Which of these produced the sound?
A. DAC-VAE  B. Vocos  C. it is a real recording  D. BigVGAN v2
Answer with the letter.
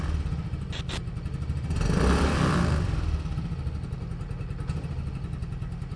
C